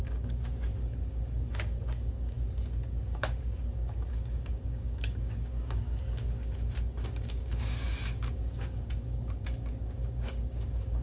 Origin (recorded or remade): remade